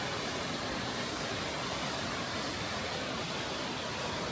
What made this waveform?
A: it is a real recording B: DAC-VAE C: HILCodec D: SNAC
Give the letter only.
A